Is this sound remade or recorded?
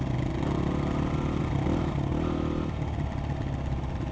recorded